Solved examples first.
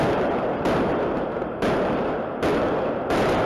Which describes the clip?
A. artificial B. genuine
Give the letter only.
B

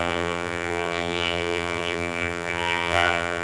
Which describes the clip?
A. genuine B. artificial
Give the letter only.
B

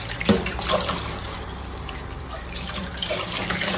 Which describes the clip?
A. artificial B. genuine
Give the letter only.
A